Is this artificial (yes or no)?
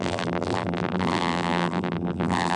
yes